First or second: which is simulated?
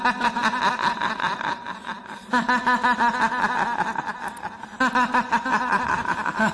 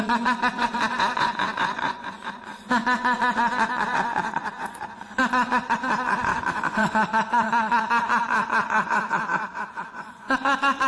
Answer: second